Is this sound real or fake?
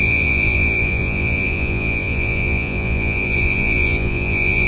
fake